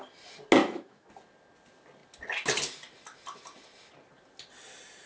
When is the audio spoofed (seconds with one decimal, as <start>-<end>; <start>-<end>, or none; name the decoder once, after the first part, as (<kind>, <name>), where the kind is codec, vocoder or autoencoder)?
0.6-1.1 (autoencoder, DAC-VAE)